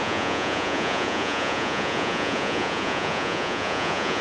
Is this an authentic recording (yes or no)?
no